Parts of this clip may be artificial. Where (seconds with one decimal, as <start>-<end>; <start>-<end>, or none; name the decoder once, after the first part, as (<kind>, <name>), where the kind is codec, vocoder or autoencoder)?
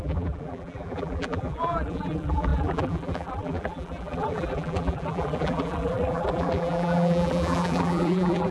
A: 0.0-8.5 (vocoder, BigVGAN v2)